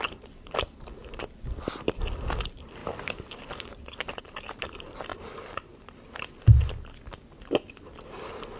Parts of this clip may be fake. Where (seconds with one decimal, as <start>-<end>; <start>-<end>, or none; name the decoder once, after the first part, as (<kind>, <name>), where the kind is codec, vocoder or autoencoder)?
none